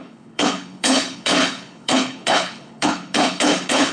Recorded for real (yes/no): no